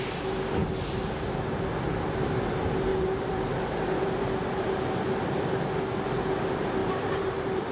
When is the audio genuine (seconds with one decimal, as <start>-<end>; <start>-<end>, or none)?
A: 0.0-2.9; 4.3-6.8